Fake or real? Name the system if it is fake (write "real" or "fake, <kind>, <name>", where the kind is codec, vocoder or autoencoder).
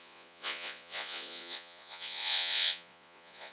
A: fake, vocoder, Vocos